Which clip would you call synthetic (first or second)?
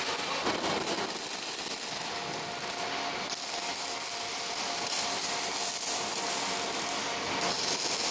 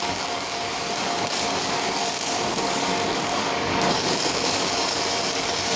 second